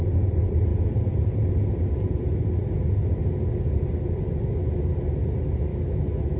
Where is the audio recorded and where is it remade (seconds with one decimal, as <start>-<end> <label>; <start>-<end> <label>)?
0.0-5.7 recorded; 5.7-6.4 remade